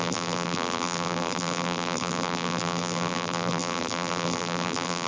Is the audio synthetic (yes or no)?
yes